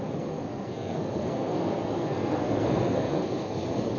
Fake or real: fake